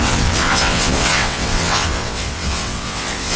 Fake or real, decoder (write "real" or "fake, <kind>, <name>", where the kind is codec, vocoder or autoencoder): fake, vocoder, WaveNeXt